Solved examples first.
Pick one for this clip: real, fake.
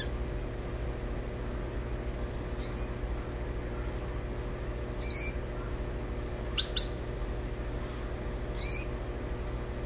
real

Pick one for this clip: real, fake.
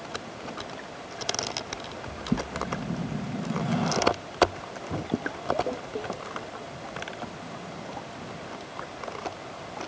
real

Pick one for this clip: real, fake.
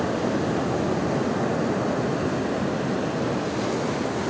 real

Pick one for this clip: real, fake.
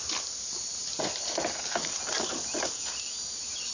real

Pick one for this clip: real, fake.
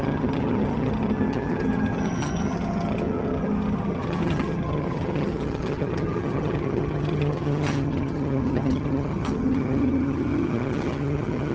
fake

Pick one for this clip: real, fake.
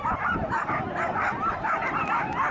real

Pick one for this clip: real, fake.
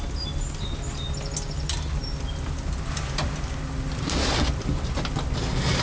real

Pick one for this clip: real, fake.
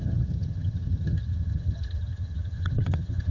fake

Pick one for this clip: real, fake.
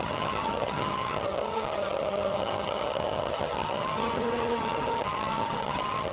fake